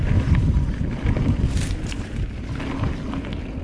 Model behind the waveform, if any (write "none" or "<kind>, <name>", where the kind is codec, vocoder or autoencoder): none